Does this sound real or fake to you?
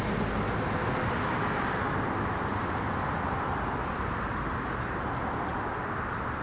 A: real